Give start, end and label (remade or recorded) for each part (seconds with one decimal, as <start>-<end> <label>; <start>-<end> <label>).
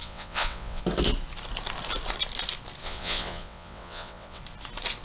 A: 0.0-0.8 remade; 0.8-2.8 recorded; 2.8-4.4 remade; 4.4-5.0 recorded